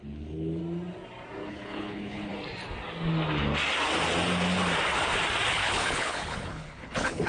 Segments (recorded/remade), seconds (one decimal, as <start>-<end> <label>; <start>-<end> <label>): 0.0-0.6 remade; 0.6-1.5 recorded; 1.5-2.3 remade; 2.3-5.5 recorded; 5.5-7.3 remade